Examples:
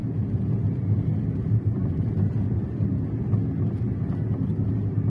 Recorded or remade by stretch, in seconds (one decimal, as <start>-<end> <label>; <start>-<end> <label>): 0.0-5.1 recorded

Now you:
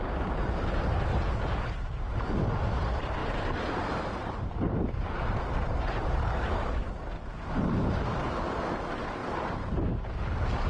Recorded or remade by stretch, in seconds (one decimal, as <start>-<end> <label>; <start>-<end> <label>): 0.0-3.2 recorded; 3.2-6.5 remade; 6.5-9.2 recorded; 9.2-9.8 remade; 9.8-10.7 recorded

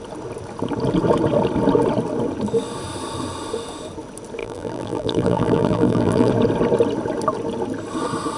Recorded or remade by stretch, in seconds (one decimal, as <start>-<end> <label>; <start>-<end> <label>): 0.0-4.4 recorded; 4.4-6.3 remade; 6.3-8.4 recorded